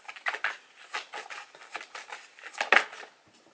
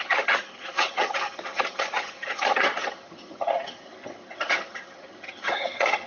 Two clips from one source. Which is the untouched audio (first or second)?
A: first